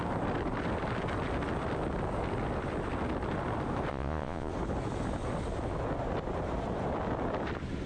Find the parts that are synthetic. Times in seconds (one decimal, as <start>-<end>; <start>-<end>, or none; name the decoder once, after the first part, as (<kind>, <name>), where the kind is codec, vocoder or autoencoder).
3.9-4.5 (vocoder, Vocos)